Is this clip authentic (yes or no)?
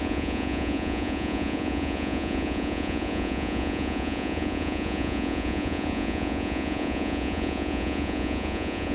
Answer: no